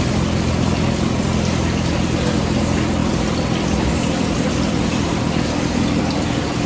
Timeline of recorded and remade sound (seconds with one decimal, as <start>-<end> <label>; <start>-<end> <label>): 0.0-6.7 recorded